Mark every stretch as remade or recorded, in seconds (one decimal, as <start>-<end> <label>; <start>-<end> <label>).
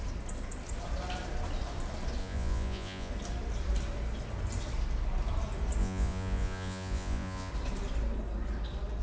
0.0-2.2 recorded; 2.2-3.1 remade; 3.1-5.8 recorded; 5.8-7.5 remade; 7.5-9.0 recorded